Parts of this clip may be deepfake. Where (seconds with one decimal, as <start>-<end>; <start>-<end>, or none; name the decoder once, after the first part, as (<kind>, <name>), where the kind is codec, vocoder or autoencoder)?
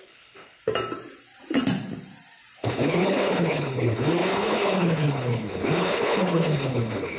0.0-0.6 (codec, HILCodec); 2.6-7.2